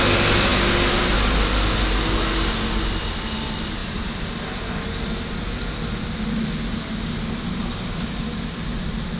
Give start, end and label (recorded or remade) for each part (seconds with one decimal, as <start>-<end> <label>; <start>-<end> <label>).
0.0-9.2 recorded